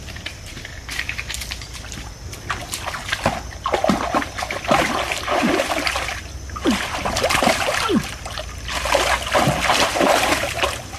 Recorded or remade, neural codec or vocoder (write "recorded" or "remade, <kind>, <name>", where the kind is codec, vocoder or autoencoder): recorded